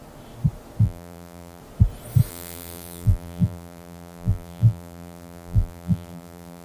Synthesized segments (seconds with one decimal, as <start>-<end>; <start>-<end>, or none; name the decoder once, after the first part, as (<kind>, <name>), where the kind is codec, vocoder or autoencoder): 0.8-1.6 (vocoder, BigVGAN v2); 2.3-6.6